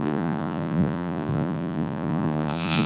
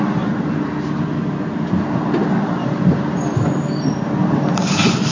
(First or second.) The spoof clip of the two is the first